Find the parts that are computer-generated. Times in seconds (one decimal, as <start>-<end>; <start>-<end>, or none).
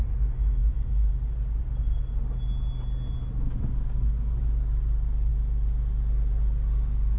none